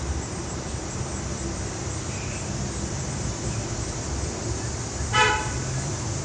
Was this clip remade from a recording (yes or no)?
yes